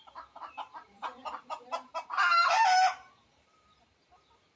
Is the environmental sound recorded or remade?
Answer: remade